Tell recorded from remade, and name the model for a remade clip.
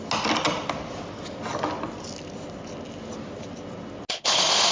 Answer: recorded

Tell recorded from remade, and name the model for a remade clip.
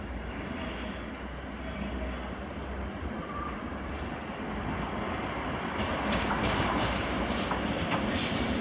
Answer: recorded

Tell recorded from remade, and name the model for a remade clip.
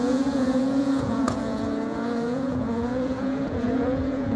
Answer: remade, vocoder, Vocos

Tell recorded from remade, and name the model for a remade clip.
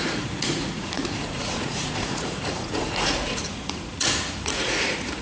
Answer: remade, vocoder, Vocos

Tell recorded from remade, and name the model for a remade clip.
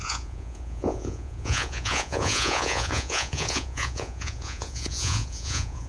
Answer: remade, vocoder, Vocos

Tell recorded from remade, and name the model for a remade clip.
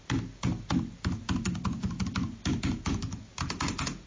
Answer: recorded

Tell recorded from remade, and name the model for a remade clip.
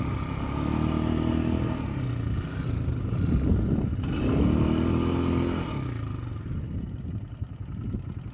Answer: recorded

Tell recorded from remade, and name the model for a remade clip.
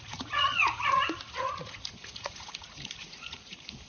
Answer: remade, vocoder, Vocos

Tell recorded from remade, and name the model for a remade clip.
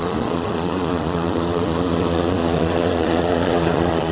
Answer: remade, vocoder, Vocos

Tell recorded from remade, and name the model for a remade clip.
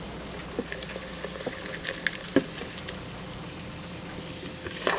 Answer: recorded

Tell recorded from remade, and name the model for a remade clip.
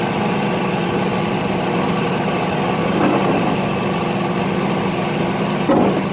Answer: recorded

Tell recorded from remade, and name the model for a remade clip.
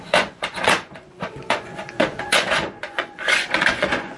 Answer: remade, vocoder, Vocos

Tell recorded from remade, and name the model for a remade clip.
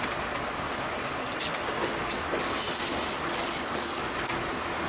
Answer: recorded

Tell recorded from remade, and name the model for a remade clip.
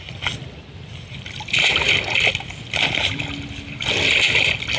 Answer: recorded